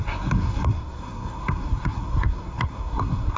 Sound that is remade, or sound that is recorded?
remade